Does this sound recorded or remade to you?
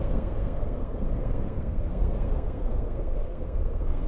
remade